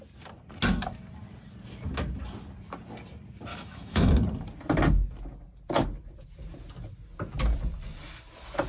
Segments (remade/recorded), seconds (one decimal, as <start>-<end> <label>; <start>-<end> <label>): 0.0-3.5 recorded; 3.5-4.1 remade; 4.1-8.7 recorded

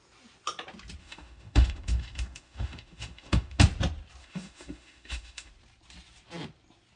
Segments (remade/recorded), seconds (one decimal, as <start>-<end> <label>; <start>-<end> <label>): 0.0-1.0 recorded; 1.0-3.6 remade; 3.6-4.2 recorded; 4.2-5.5 remade; 5.5-7.0 recorded

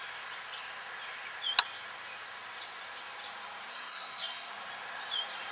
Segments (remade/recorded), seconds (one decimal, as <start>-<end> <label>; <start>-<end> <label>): 0.0-3.7 recorded; 3.7-4.5 remade; 4.5-5.5 recorded